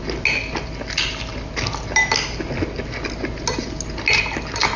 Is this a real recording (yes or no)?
yes